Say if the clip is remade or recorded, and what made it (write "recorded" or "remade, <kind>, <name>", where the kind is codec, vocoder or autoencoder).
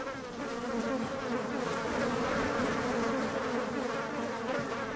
recorded